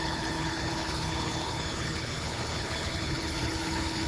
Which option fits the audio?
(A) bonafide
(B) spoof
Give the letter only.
B